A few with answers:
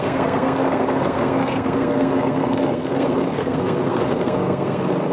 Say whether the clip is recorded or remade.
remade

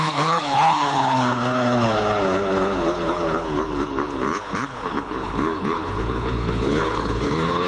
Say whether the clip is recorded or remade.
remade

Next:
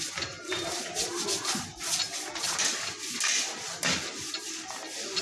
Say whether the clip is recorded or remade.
recorded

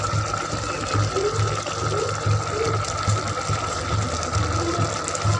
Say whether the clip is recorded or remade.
recorded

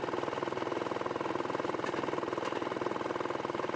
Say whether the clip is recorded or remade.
recorded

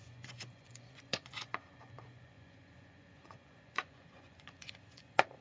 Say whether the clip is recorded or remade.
remade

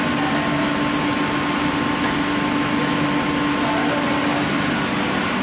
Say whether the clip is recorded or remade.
recorded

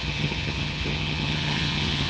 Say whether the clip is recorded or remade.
remade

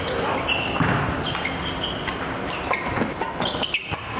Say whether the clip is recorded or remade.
recorded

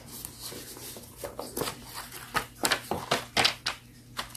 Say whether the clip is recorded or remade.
recorded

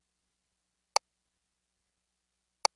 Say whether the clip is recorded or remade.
recorded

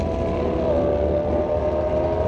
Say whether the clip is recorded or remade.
recorded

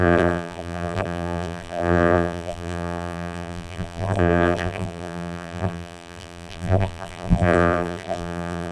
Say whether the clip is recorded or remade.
remade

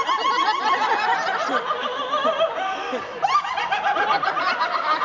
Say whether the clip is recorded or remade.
recorded